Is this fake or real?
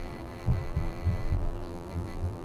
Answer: fake